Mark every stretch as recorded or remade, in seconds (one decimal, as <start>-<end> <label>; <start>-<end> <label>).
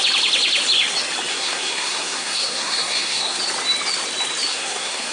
0.0-1.3 recorded; 1.3-3.4 remade; 3.4-4.5 recorded; 4.5-5.1 remade